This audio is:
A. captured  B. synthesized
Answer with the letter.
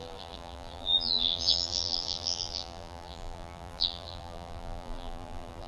B